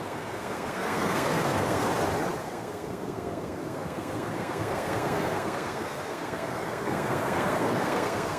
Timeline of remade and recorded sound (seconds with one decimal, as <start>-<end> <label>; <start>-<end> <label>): 0.0-1.9 remade; 1.9-2.4 recorded; 2.4-8.4 remade